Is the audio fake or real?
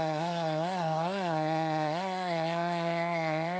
fake